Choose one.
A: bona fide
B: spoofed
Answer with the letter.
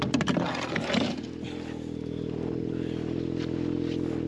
A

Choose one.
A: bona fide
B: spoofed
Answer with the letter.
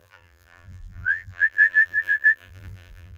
B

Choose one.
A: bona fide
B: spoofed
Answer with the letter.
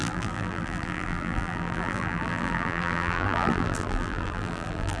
B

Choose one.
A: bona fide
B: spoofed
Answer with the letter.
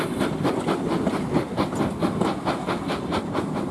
A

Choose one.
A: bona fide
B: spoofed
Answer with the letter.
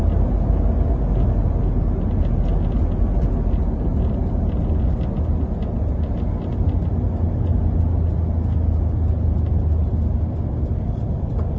A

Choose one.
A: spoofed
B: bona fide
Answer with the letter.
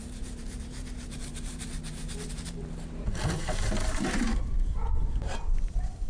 A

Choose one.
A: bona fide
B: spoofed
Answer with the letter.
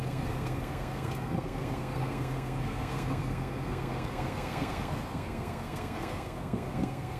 B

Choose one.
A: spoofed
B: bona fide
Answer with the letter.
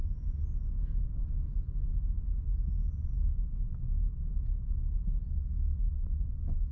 B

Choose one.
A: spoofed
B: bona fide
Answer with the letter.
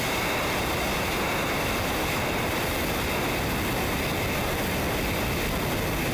B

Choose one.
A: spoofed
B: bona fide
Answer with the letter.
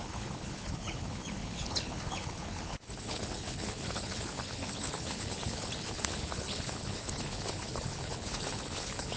A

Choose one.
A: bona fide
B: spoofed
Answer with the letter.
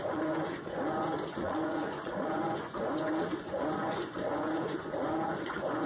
B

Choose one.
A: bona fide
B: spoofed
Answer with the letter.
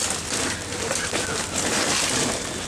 B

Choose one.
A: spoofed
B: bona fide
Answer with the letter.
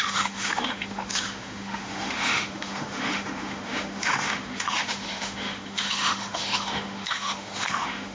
A